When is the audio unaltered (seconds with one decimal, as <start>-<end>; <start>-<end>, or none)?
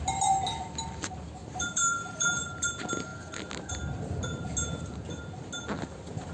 0.0-1.4; 2.7-6.3